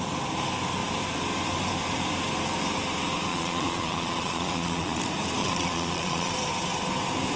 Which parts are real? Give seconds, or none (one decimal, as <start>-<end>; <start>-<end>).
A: 0.0-3.3; 5.0-5.4; 6.3-7.4